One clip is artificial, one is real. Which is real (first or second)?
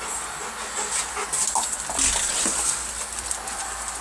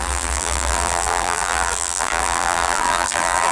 first